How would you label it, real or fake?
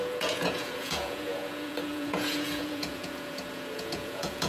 fake